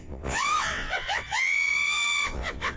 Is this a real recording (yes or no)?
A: no